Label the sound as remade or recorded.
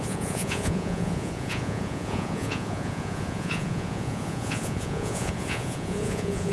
remade